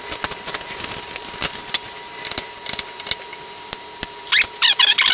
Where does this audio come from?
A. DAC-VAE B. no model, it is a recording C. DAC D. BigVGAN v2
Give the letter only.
B